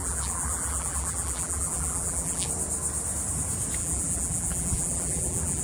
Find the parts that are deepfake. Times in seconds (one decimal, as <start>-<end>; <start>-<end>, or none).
0.0-2.5; 3.8-5.6